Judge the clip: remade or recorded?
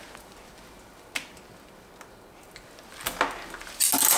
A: recorded